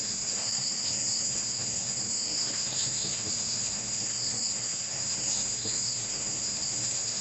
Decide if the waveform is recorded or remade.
remade